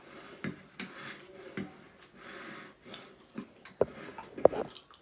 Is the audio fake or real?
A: real